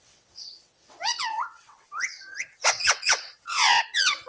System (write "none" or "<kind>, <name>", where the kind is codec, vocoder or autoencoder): vocoder, WaveNeXt